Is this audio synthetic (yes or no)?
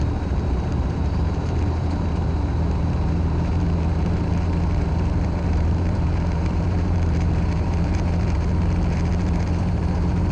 yes